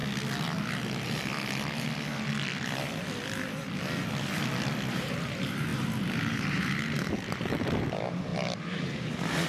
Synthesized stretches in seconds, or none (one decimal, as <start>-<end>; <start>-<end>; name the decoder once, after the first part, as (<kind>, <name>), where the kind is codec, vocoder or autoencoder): 4.9-9.5 (vocoder, BigVGAN v2)